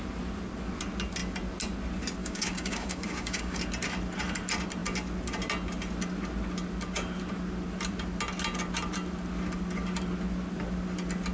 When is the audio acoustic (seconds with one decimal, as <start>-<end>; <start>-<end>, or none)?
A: 0.0-2.2; 3.6-11.3